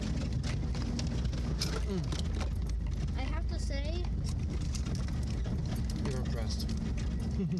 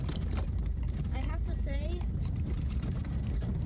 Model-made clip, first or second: second